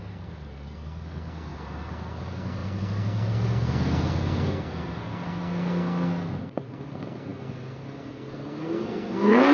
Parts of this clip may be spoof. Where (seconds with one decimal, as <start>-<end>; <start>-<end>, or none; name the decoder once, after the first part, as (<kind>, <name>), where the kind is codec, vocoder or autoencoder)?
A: 0.0-9.5 (codec, SNAC)